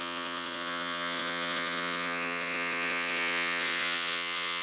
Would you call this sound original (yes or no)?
no